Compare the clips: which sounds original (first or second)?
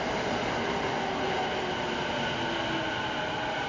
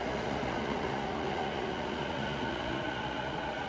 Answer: first